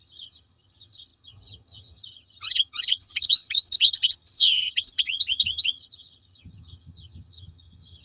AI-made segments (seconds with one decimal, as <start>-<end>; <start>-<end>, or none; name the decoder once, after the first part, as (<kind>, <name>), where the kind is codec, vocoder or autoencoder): 0.0-8.0 (vocoder, HiFi-GAN)